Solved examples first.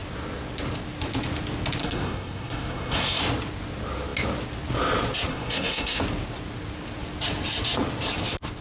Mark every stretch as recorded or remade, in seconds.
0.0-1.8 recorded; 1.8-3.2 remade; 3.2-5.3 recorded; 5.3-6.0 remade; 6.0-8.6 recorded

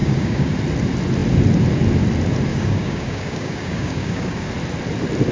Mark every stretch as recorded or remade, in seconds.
0.0-0.5 remade; 0.5-2.5 recorded; 2.5-4.5 remade; 4.5-5.3 recorded

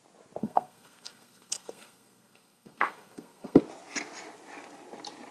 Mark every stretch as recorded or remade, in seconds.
0.0-0.4 recorded; 0.4-3.6 remade; 3.6-5.3 recorded

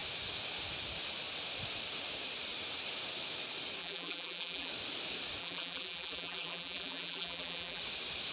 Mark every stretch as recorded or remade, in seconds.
0.0-3.8 recorded; 3.8-4.7 remade; 4.7-5.4 recorded; 5.4-7.8 remade; 7.8-8.3 recorded

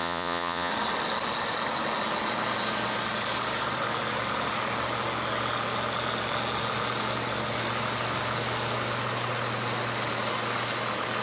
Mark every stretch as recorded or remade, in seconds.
0.0-0.7 remade; 0.7-11.2 recorded

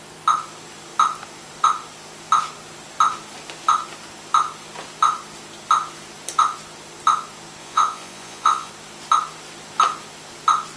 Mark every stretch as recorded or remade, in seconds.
0.0-7.6 recorded; 7.6-8.7 remade; 8.7-10.8 recorded